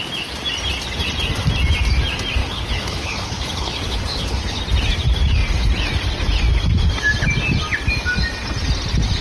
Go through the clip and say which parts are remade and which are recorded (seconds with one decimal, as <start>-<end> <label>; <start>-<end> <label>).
0.0-2.4 recorded; 2.4-4.6 remade; 4.6-9.2 recorded